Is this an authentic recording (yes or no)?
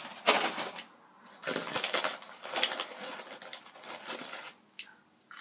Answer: yes